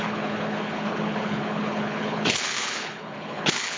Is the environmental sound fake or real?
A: fake